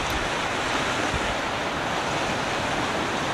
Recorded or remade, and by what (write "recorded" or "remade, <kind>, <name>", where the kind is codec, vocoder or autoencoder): recorded